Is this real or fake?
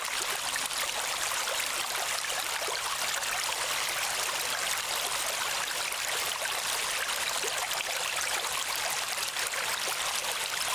fake